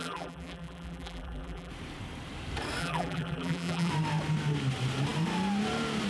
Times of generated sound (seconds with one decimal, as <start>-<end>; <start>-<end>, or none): 0.0-1.7; 2.8-3.9